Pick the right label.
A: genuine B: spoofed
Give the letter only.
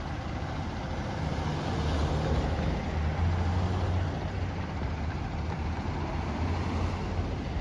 A